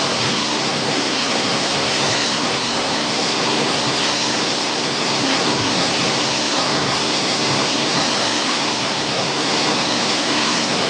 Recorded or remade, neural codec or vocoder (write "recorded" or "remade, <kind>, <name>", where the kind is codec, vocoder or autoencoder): remade, codec, SNAC